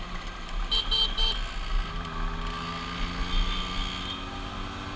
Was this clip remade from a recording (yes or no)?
no